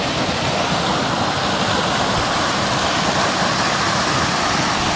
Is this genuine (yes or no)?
no